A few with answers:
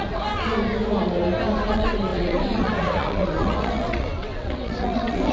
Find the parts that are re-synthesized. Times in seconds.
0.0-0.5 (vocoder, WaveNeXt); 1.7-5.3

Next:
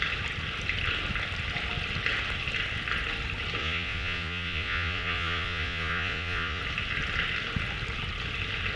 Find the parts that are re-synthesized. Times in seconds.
3.6-6.6 (vocoder, Vocos)

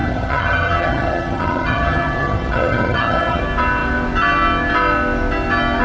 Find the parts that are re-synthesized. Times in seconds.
0.0-3.4 (vocoder, HiFi-GAN)

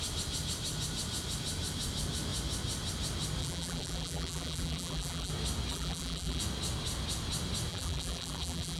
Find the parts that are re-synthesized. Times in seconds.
3.4-5.3 (vocoder, BigVGAN v2); 5.7-6.4; 7.7-8.8

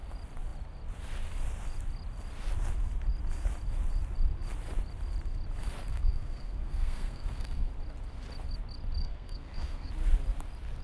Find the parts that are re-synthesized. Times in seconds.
5.9-7.7 (codec, SNAC); 9.0-9.9

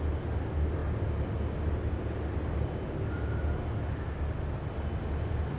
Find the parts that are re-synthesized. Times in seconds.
none